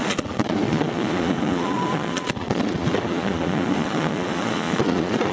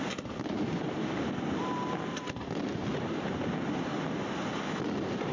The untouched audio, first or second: second